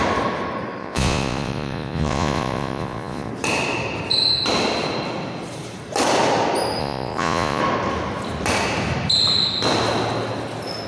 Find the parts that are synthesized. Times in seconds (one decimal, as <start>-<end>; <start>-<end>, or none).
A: 0.8-3.3; 6.8-7.6